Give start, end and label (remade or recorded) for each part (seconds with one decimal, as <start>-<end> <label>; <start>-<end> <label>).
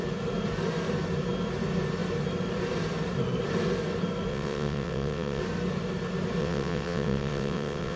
0.0-4.3 recorded; 4.3-5.4 remade; 5.4-6.4 recorded; 6.4-8.0 remade